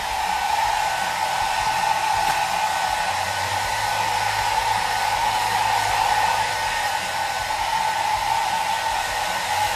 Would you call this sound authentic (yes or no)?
yes